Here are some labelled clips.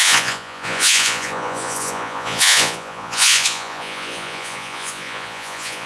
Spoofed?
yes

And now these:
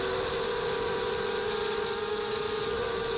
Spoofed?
no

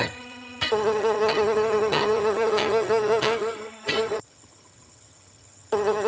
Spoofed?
yes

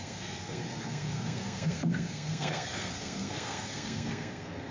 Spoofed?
yes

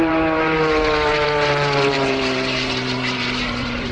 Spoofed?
yes